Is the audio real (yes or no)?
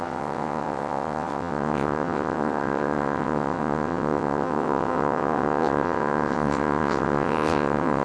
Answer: no